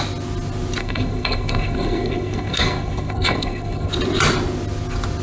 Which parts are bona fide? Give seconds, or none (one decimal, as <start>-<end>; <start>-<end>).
0.0-0.8; 3.9-5.2